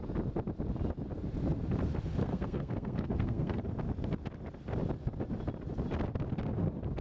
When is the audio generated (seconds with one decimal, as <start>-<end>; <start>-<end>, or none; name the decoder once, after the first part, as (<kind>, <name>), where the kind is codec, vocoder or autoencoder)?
2.2-3.6 (codec, SNAC)